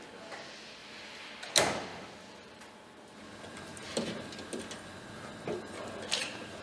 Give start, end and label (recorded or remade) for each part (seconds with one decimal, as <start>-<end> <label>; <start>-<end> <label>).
0.0-0.8 recorded; 0.8-1.3 remade; 1.3-1.9 recorded; 1.9-3.0 remade; 3.0-6.6 recorded